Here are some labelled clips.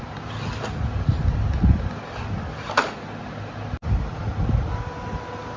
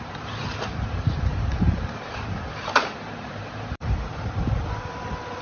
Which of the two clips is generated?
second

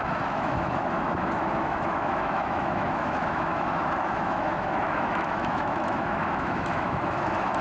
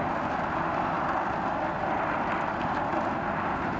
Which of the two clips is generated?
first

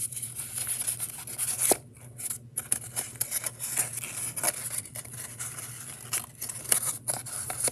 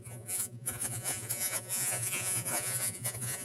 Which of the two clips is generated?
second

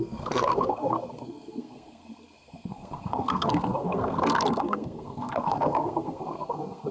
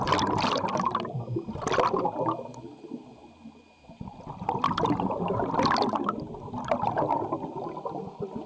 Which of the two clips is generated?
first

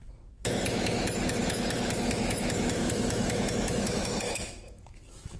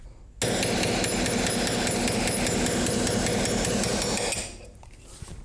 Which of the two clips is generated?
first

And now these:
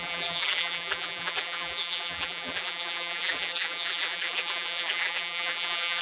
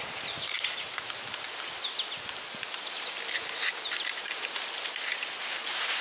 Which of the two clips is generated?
first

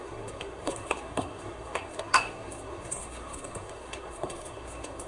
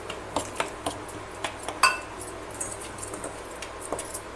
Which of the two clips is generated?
first